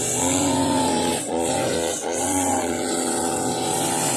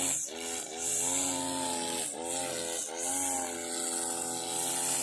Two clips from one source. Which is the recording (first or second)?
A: second